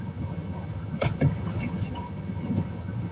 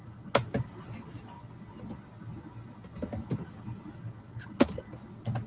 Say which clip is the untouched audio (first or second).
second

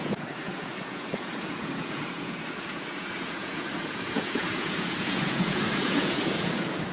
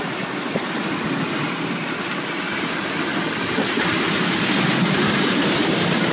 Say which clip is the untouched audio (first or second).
second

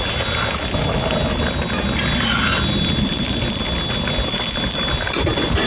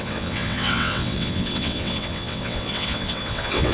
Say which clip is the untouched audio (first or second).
first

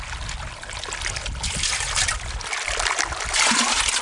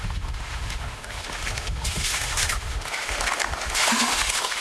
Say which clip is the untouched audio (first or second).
first